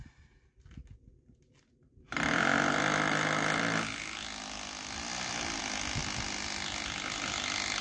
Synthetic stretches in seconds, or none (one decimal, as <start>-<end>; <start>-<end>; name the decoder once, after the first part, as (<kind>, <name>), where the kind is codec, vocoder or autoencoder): none